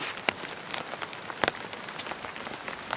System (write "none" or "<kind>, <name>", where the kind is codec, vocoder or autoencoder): none